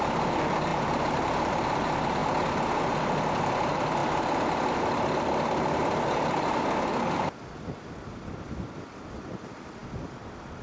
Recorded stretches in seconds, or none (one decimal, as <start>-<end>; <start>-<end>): 0.0-10.6